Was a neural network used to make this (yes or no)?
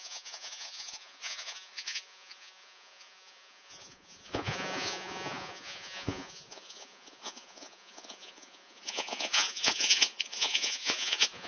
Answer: yes